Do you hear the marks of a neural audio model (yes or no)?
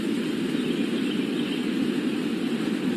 no